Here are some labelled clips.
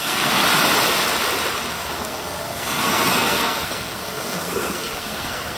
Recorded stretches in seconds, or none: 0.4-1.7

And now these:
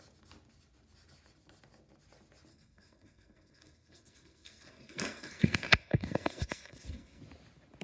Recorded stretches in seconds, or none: 0.0-2.5; 7.2-7.8

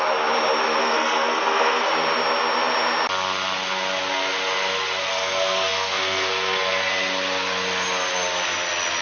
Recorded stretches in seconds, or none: 0.0-0.8; 1.9-5.1; 6.9-9.0

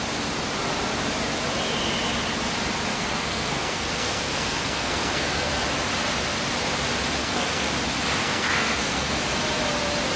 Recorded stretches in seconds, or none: 0.0-2.9; 5.5-7.2; 7.7-8.2; 9.2-10.2